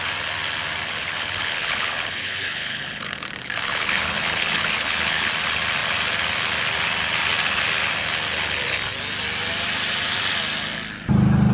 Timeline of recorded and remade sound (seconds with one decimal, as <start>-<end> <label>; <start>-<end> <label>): 0.0-1.0 recorded; 1.0-5.3 remade; 5.3-11.5 recorded